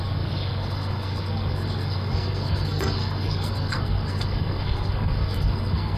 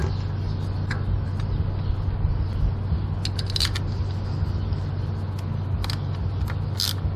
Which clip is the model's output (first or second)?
first